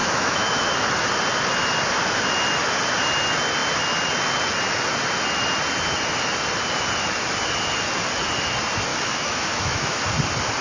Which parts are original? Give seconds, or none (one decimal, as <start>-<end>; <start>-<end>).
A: 0.7-8.9; 10.0-10.6